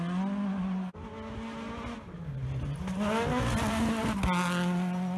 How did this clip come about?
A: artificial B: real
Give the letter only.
B